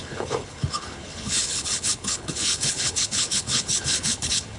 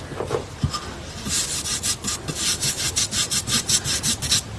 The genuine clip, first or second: second